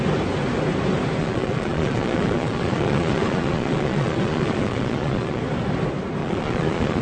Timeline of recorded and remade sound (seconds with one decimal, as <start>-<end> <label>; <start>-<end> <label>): 0.0-1.2 recorded; 1.2-5.4 remade; 5.4-6.2 recorded; 6.2-7.0 remade